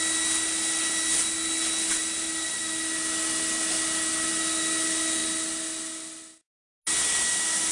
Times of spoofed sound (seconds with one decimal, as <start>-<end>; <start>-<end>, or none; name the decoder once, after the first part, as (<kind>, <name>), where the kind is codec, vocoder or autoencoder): none